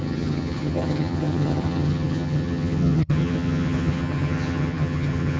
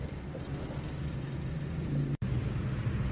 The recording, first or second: second